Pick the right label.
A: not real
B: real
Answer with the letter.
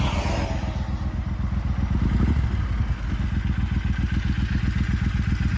B